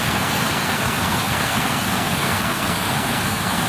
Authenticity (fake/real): fake